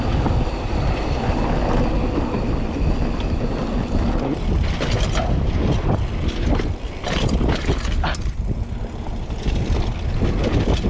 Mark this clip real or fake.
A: real